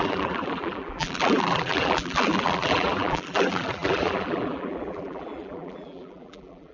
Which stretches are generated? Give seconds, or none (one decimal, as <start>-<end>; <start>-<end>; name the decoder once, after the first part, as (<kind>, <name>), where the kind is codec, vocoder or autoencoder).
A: 0.0-6.7 (vocoder, BigVGAN v2)